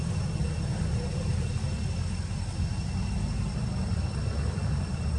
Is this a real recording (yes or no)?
yes